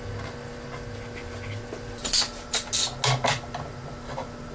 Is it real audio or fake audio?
real